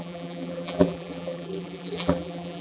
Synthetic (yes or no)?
yes